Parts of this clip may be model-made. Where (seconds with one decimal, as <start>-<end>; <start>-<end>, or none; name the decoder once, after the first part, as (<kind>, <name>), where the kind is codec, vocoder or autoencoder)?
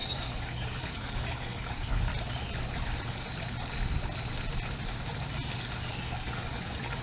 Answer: 0.0-2.1 (codec, DAC); 6.0-7.0